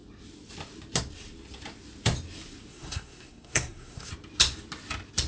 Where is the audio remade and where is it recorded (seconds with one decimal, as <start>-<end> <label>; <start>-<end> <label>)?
0.0-2.7 recorded; 2.7-4.1 remade; 4.1-5.3 recorded